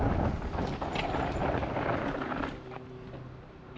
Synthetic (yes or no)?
no